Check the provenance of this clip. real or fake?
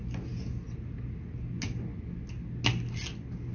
real